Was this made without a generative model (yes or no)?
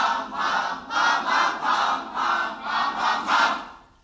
yes